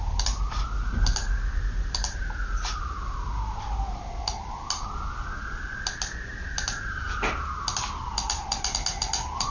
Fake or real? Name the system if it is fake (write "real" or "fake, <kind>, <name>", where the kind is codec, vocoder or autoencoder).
real